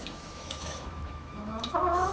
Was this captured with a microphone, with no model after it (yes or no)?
no